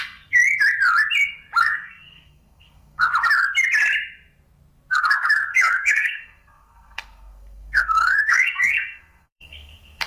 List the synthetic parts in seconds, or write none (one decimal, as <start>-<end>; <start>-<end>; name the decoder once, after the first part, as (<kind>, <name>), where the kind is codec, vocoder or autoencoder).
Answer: 0.0-0.4 (codec, SNAC); 1.6-3.1; 4.9-10.1